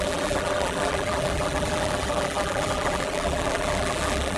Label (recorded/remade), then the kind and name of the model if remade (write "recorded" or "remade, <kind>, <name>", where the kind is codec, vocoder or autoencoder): remade, vocoder, BigVGAN v2